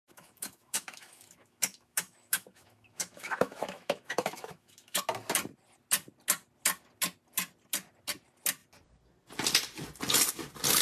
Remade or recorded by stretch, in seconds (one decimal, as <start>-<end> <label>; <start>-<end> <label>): 0.0-5.0 remade; 5.0-10.8 recorded